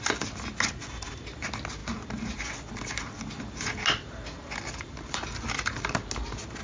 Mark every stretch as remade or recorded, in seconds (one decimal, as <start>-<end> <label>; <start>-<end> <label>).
0.0-6.6 recorded